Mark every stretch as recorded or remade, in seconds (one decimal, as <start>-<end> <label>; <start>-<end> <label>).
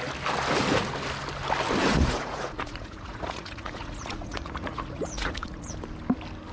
0.0-1.8 recorded; 1.8-5.7 remade; 5.7-6.5 recorded